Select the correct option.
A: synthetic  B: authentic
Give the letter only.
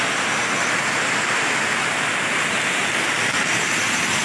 B